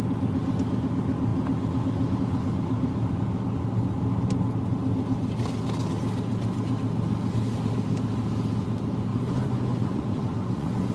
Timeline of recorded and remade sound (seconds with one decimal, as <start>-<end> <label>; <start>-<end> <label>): 0.0-9.1 recorded; 9.1-10.9 remade